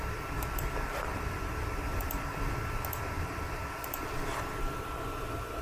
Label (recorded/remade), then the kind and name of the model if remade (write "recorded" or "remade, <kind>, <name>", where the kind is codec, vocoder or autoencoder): remade, vocoder, BigVGAN v2